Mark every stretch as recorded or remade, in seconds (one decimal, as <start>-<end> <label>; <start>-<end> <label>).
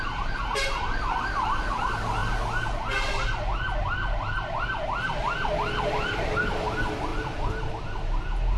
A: 0.0-8.6 recorded